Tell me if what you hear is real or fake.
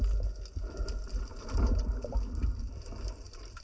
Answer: real